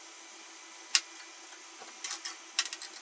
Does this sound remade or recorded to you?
recorded